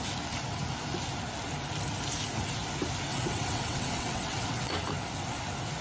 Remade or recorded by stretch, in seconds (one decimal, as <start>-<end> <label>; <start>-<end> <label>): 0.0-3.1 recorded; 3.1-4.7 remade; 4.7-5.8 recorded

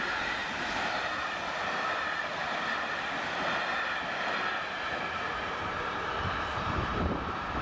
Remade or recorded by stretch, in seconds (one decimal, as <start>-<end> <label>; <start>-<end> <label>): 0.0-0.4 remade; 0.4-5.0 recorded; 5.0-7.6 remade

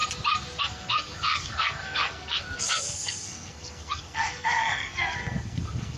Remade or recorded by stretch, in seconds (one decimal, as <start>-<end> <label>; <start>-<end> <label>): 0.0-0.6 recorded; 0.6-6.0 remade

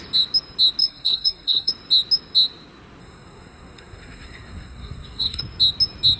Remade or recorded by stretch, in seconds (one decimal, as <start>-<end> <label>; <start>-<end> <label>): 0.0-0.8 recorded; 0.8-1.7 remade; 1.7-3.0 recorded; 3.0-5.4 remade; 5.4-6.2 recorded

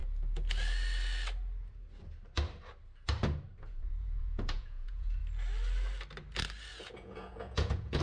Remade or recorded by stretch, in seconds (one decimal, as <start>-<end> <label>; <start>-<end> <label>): 0.0-3.6 recorded; 3.6-5.2 remade; 5.2-6.7 recorded; 6.7-8.0 remade

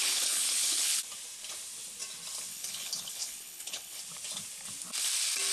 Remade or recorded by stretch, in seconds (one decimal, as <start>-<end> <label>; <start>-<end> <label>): 0.0-1.0 remade; 1.0-2.5 recorded; 2.5-4.0 remade; 4.0-5.5 recorded